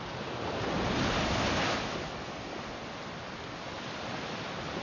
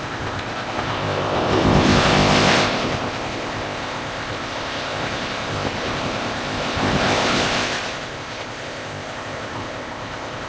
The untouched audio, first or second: first